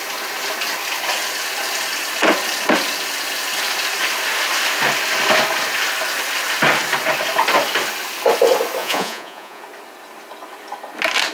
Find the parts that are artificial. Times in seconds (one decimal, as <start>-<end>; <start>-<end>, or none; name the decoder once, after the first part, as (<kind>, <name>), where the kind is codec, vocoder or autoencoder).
8.8-9.6 (vocoder, Vocos)